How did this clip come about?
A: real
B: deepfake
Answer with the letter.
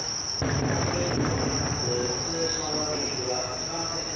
A